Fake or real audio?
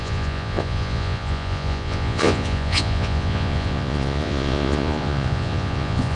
fake